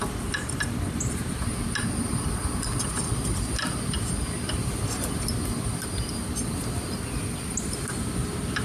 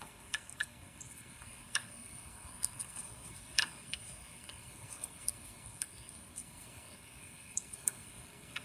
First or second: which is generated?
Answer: second